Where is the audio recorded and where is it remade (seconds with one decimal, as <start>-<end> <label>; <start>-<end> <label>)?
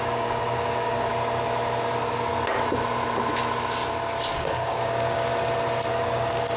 0.0-1.1 remade; 1.1-4.3 recorded; 4.3-5.3 remade; 5.3-5.9 recorded; 5.9-6.6 remade